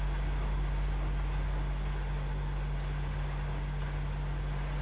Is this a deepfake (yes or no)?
no